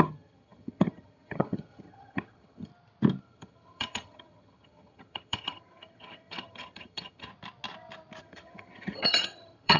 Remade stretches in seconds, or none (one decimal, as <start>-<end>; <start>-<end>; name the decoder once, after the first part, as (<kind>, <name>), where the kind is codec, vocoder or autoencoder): 0.0-2.7 (vocoder, HiFi-GAN); 3.2-7.3; 8.2-9.8